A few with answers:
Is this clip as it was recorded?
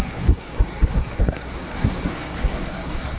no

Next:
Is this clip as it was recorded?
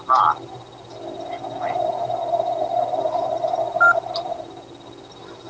yes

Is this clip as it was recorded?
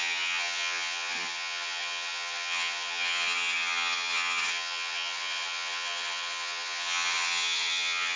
no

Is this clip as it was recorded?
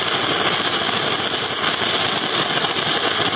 yes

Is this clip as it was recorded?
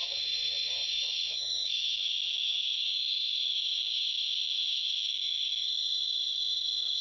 no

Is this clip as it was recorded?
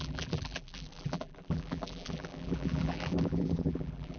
no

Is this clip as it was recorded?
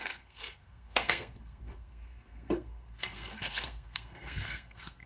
no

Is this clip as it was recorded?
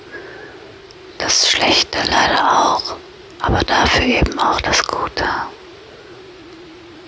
yes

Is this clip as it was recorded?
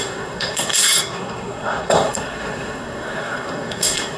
no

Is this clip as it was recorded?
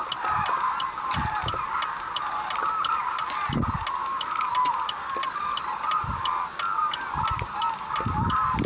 yes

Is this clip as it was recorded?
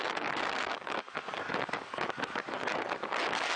no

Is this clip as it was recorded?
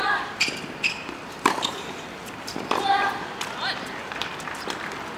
no